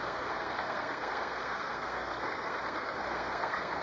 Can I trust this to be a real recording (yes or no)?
no